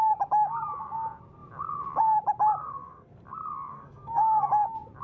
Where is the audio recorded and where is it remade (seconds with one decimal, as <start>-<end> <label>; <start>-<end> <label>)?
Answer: 0.0-2.6 recorded; 2.6-3.1 remade; 3.1-3.7 recorded; 3.7-4.5 remade; 4.5-5.0 recorded